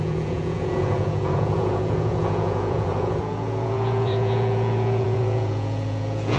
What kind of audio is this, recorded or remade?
remade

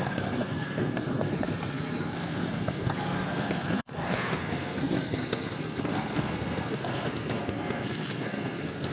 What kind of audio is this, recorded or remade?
remade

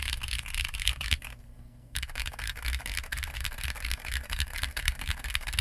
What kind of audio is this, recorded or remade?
remade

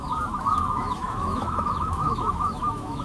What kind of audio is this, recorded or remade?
remade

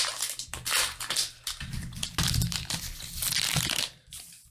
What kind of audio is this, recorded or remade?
recorded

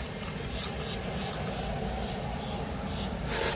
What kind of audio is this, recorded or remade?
recorded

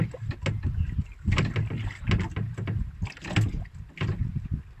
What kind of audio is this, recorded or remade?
recorded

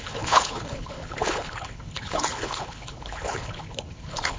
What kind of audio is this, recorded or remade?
remade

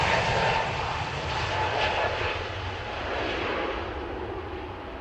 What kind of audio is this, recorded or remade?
recorded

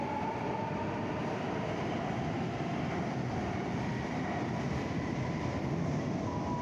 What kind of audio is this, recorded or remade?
remade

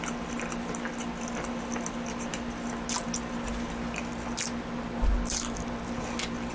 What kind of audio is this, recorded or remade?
recorded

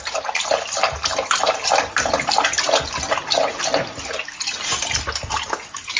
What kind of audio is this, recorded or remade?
recorded